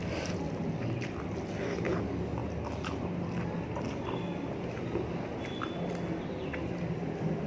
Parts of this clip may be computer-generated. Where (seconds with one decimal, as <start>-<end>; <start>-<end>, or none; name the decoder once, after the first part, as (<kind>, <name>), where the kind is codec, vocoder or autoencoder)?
none